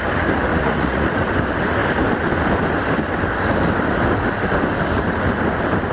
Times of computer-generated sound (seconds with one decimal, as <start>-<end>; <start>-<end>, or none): 0.5-1.3